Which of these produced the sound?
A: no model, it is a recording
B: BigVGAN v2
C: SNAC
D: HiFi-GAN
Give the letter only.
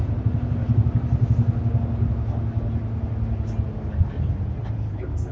A